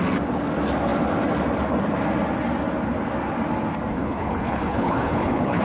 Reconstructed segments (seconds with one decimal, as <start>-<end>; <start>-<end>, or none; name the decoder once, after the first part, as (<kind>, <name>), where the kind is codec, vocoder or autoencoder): 3.9-5.6 (codec, HILCodec)